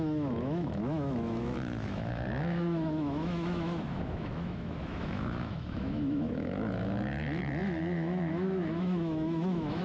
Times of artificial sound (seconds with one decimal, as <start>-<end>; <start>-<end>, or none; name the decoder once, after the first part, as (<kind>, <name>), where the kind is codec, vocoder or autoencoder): 0.0-9.8 (autoencoder, DAC-VAE)